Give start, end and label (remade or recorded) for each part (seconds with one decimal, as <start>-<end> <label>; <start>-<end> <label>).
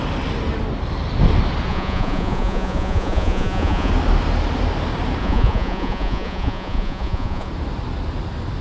0.0-1.7 recorded; 1.7-3.9 remade; 3.9-5.2 recorded; 5.2-7.5 remade; 7.5-8.6 recorded